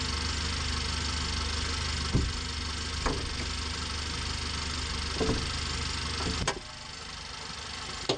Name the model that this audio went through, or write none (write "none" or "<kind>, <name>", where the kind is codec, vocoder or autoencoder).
none